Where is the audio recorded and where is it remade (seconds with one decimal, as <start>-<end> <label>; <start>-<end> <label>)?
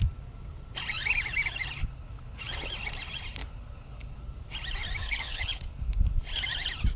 0.0-1.8 recorded; 1.8-2.4 remade; 2.4-3.4 recorded; 3.4-4.2 remade; 4.2-5.0 recorded; 5.0-6.1 remade; 6.1-7.0 recorded